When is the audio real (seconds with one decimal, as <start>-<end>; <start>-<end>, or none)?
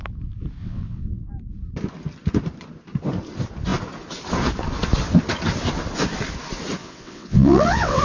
0.0-0.6; 1.2-6.8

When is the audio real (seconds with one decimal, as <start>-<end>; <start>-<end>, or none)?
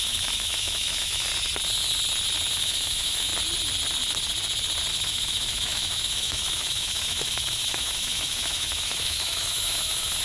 1.3-2.5; 3.3-4.9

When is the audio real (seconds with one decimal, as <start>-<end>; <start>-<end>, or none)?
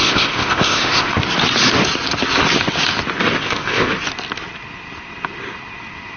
1.2-3.4; 3.9-6.2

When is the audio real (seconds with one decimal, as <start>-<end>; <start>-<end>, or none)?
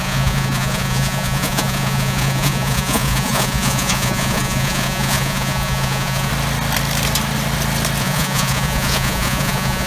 6.3-8.0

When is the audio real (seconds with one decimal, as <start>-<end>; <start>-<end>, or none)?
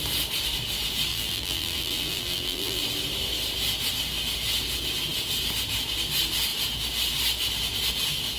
0.0-1.1; 2.8-8.4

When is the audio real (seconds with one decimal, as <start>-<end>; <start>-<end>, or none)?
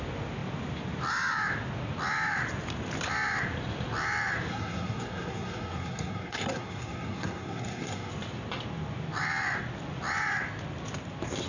0.0-4.5; 8.1-11.5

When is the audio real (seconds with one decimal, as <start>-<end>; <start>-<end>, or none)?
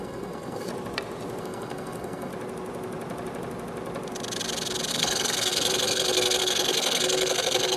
0.7-1.4; 2.3-4.9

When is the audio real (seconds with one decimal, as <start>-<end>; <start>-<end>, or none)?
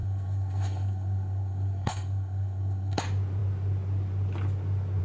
3.0-5.0